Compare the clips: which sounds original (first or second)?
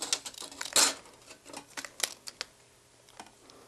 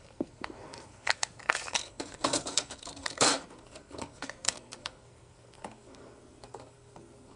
first